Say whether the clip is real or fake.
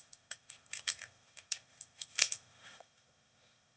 fake